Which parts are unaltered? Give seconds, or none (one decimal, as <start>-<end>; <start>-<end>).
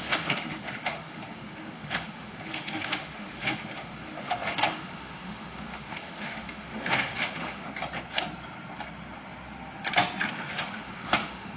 7.7-10.3